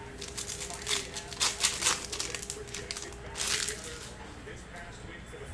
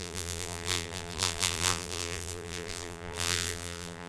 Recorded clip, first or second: first